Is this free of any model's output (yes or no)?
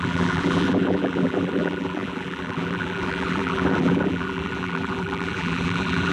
no